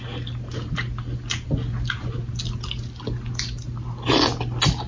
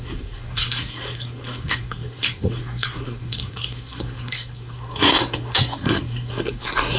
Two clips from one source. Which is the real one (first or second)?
first